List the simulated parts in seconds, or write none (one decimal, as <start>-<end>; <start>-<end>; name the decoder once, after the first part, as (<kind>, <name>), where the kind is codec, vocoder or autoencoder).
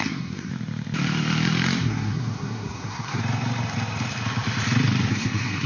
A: 0.0-0.5 (codec, SNAC); 1.8-3.2; 5.1-5.7